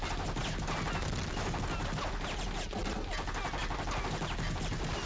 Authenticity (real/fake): real